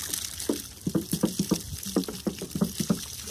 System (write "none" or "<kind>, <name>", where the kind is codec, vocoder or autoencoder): none